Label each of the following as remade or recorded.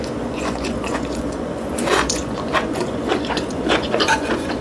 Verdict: remade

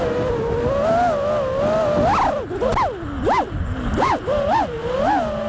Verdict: recorded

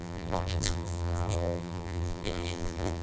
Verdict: remade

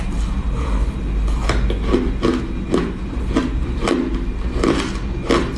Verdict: recorded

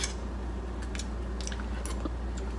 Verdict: recorded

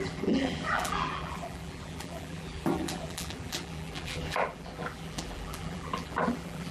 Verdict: remade